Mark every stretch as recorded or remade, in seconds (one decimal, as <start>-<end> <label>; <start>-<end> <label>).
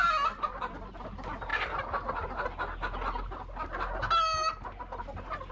0.0-5.5 recorded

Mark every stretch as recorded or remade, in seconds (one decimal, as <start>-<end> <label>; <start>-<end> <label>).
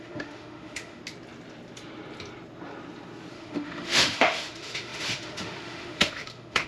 0.0-1.0 remade; 1.0-3.3 recorded; 3.3-6.7 remade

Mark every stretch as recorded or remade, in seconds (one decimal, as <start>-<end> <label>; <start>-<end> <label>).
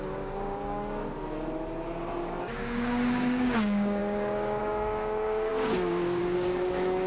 0.0-1.0 remade; 1.0-2.4 recorded; 2.4-7.1 remade